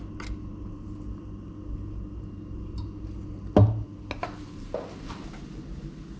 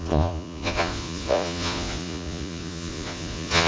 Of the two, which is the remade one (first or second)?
second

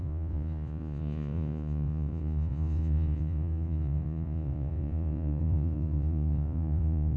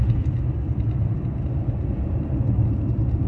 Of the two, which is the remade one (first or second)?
first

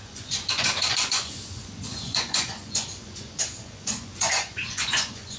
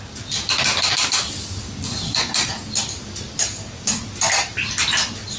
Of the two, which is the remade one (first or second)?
first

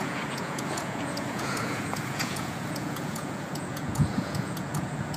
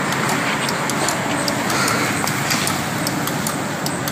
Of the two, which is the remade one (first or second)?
first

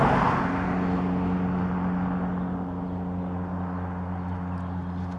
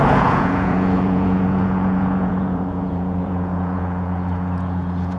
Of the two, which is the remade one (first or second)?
second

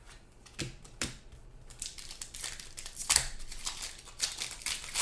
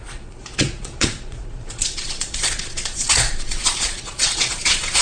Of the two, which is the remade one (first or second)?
second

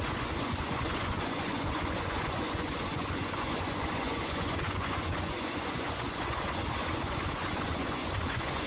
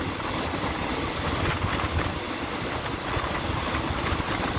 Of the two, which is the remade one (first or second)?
first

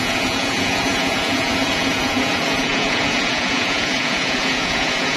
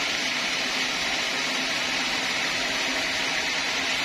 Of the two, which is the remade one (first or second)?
first